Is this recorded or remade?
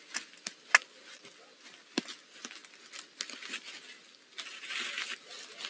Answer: recorded